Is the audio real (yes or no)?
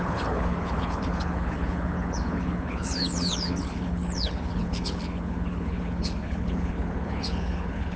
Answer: no